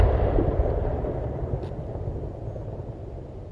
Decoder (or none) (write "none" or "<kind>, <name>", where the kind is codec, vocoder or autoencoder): none